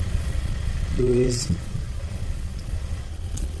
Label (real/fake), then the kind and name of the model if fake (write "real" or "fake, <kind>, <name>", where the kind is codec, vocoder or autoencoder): fake, vocoder, Vocos